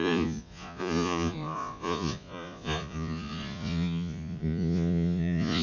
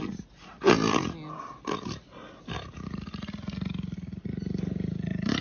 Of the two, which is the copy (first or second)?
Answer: first